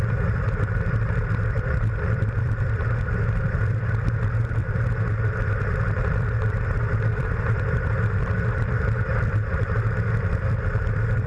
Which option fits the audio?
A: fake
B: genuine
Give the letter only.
A